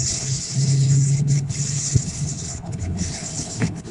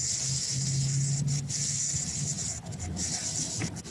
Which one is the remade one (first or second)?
first